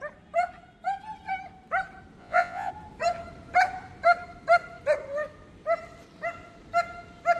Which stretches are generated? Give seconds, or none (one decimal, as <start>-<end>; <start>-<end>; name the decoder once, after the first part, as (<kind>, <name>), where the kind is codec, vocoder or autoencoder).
2.2-2.7 (vocoder, Vocos)